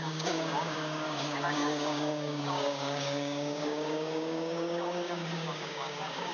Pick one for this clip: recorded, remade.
remade